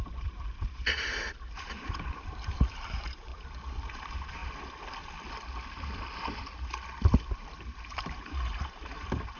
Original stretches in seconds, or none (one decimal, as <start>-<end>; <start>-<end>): 3.3-3.8; 4.4-7.6